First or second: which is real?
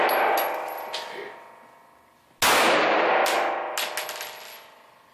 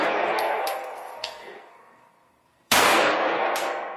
first